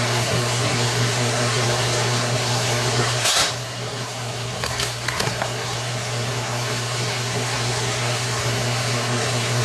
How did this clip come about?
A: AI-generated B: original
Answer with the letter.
A